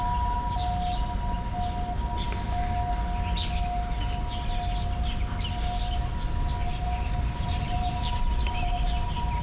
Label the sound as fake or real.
real